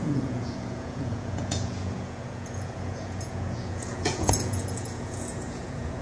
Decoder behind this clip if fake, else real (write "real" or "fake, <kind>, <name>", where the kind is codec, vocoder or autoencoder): fake, vocoder, Vocos